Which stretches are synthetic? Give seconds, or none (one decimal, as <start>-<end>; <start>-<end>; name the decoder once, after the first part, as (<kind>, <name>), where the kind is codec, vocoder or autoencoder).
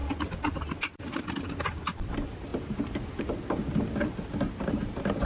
1.3-2.5 (vocoder, BigVGAN v2)